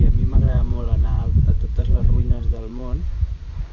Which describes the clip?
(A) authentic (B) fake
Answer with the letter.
B